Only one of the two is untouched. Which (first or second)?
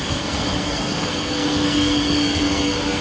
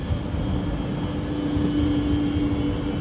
second